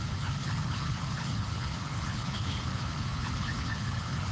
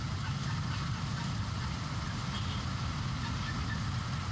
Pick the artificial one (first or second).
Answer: first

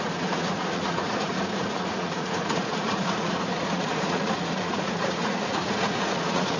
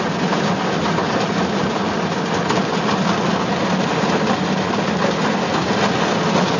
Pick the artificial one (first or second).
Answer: first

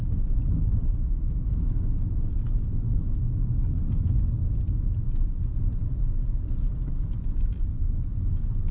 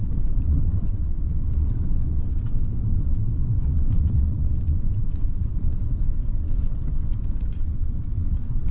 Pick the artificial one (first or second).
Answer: second